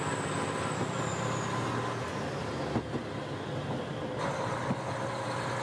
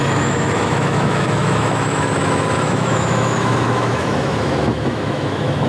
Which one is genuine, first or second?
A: first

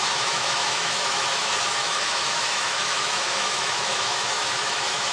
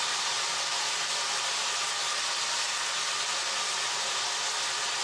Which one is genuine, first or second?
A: second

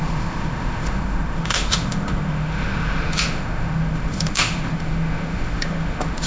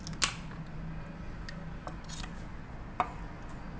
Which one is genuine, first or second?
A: second